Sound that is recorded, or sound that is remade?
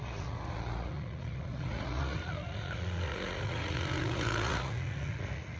remade